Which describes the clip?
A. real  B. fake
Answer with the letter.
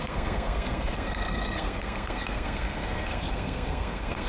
B